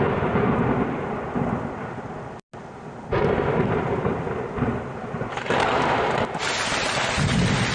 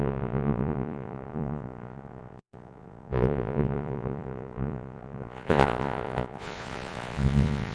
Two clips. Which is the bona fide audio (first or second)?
first